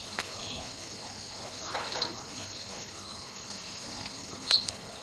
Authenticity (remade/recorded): remade